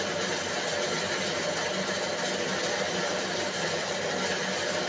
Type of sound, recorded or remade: recorded